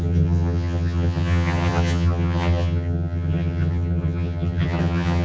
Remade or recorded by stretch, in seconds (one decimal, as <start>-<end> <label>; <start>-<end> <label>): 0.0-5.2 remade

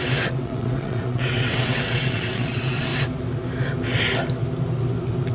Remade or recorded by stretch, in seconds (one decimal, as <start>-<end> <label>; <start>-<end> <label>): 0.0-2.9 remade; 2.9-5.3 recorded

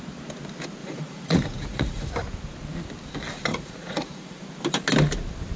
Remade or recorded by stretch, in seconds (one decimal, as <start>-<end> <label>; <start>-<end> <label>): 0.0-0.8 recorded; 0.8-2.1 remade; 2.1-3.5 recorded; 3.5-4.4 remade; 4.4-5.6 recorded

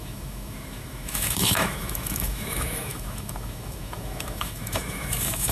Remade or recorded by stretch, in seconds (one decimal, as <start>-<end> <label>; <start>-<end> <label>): 0.0-5.5 remade